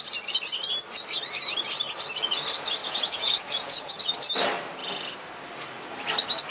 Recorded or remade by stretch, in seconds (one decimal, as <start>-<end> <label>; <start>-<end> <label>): 0.0-2.8 recorded; 2.8-4.0 remade; 4.0-6.5 recorded